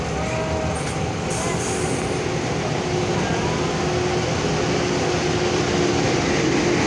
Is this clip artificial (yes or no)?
no